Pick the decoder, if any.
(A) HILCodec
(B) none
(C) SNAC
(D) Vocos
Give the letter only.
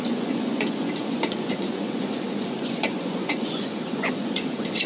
D